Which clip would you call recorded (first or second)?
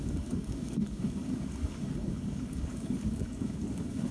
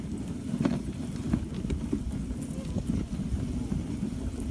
second